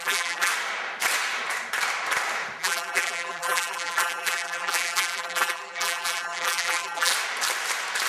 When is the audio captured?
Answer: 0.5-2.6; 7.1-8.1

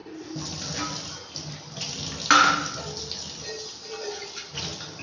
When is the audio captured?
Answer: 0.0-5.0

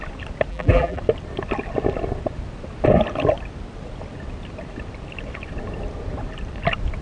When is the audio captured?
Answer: 0.0-0.5; 1.0-7.0

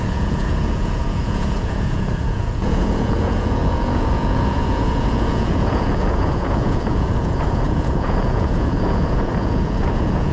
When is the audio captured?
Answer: none

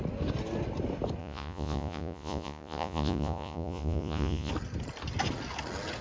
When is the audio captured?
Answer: 0.0-1.2; 4.5-6.0

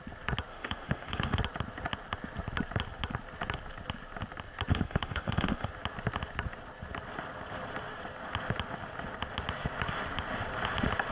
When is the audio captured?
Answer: 0.0-0.5; 1.4-4.7; 5.7-11.1

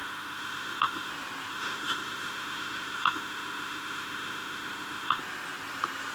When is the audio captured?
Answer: 1.1-1.5; 5.2-6.1